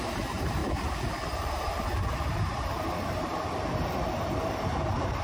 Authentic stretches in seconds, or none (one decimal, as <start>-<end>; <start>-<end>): 0.6-1.2

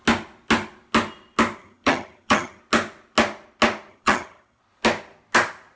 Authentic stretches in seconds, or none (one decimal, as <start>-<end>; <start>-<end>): 0.0-1.6; 2.6-3.9; 4.6-5.8